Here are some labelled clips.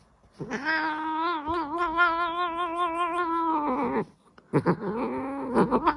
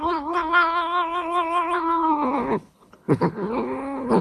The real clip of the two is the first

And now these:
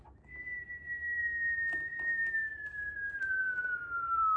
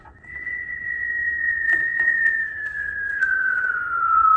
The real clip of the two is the first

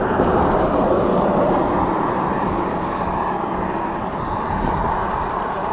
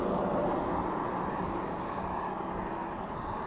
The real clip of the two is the second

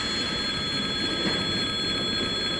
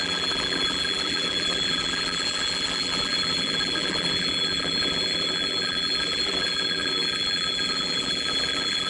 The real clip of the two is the first